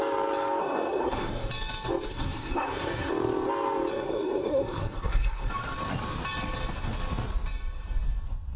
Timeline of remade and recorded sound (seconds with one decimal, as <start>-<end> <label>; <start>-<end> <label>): 0.0-0.6 recorded; 0.6-1.5 remade; 1.5-2.1 recorded; 2.1-3.1 remade; 3.1-3.9 recorded; 3.9-5.5 remade; 5.5-8.6 recorded